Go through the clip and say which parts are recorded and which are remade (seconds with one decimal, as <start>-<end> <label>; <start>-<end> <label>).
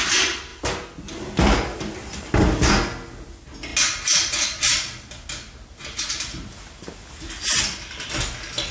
0.0-8.7 recorded